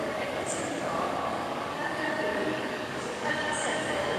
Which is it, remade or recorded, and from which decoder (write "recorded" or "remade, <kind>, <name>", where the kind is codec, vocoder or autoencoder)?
remade, codec, DAC